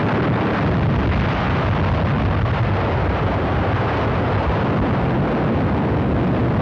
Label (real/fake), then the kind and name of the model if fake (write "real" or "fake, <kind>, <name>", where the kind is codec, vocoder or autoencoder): real